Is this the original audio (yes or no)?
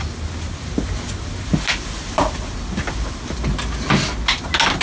yes